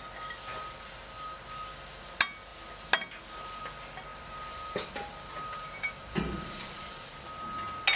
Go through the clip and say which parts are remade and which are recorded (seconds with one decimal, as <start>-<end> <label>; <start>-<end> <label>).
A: 0.0-4.1 recorded; 4.1-7.1 remade; 7.1-8.0 recorded